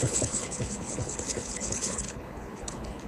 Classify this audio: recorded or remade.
remade